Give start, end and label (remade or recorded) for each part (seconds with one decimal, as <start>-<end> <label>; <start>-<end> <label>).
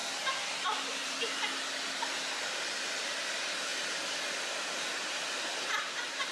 0.0-6.3 recorded